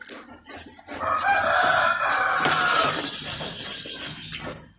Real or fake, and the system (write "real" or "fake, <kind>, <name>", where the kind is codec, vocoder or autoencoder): real